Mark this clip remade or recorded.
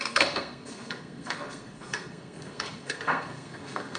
remade